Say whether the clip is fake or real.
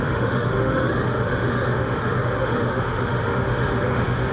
fake